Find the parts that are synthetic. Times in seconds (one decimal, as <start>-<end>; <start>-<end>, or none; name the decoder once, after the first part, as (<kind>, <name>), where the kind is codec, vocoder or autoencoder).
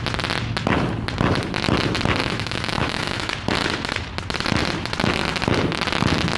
2.2-3.3 (autoencoder, DAC-VAE)